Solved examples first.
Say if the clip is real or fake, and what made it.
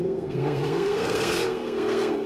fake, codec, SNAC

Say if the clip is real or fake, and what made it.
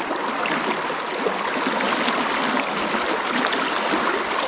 real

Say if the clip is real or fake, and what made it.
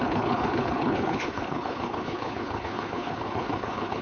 fake, codec, HILCodec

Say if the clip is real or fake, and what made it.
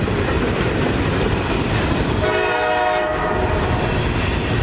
real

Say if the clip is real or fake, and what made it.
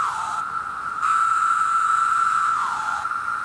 fake, vocoder, Vocos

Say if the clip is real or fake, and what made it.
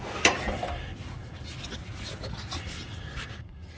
real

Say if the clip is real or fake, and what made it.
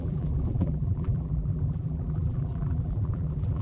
fake, vocoder, BigVGAN v2